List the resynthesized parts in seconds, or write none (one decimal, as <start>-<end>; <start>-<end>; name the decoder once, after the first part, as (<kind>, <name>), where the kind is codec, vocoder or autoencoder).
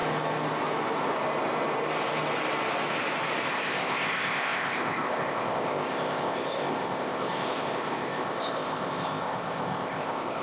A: 3.5-10.4 (codec, ZipCodec)